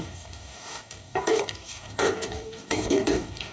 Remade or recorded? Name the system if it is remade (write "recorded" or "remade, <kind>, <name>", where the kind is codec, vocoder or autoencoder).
remade, codec, DAC